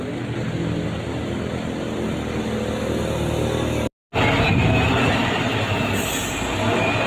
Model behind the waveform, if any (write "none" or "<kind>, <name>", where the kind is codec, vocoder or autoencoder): none